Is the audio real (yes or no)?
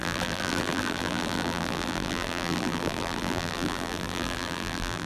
no